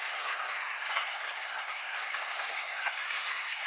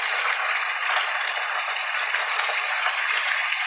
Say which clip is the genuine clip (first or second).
second